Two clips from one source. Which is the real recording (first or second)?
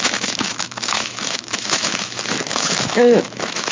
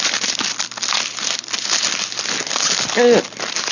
second